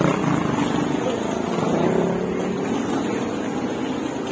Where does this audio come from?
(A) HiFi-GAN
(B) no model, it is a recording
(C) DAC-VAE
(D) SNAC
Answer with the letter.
B